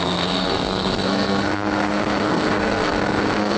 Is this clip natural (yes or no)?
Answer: no